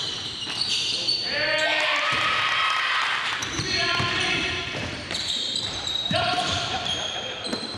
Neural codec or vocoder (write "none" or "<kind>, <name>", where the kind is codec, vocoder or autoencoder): vocoder, BigVGAN v2